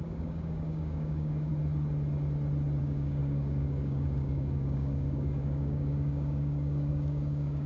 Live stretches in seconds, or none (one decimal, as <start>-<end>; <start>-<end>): 1.5-2.8